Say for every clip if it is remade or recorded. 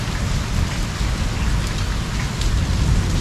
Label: recorded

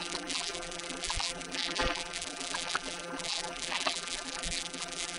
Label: remade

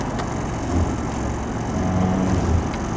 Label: recorded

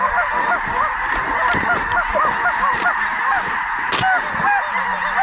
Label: recorded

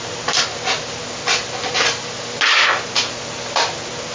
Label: recorded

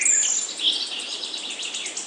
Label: recorded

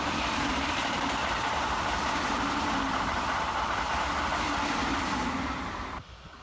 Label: remade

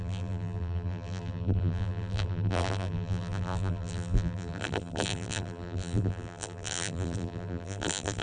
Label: remade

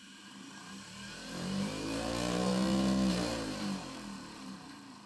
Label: remade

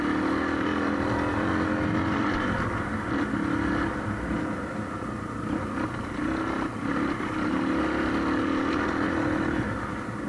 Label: recorded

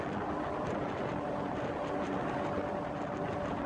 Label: recorded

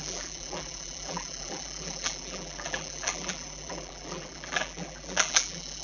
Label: remade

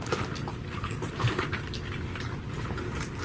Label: recorded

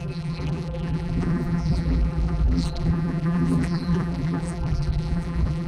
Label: remade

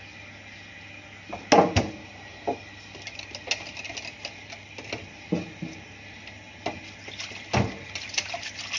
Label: recorded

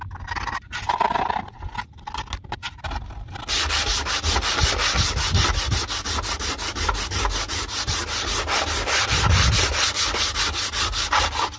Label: recorded